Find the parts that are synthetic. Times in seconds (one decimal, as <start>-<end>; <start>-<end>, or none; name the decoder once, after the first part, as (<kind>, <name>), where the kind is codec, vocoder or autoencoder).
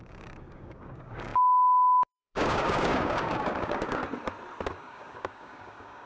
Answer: 0.0-4.0 (codec, DAC); 4.8-6.1